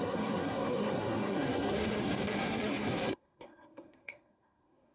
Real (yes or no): no